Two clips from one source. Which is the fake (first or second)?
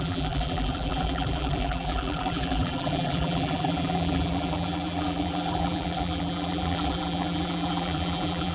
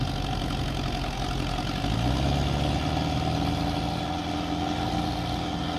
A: first